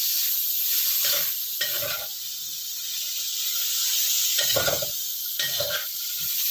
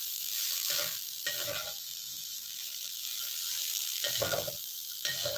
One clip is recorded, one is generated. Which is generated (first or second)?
second